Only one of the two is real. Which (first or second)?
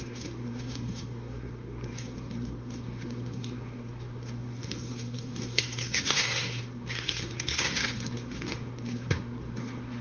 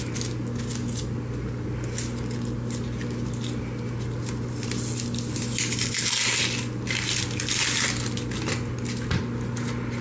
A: second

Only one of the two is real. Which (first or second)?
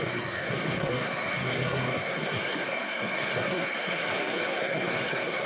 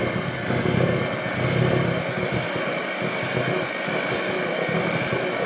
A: second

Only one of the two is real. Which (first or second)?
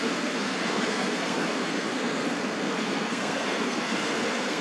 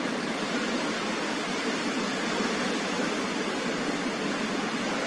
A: second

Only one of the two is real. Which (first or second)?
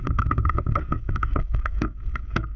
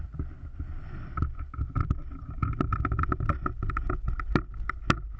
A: second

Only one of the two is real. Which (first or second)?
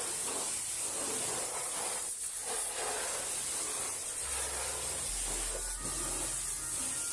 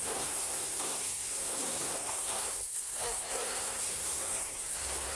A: first